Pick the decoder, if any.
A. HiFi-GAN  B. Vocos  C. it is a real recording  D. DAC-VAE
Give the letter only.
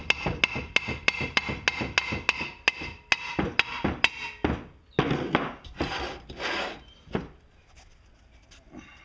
C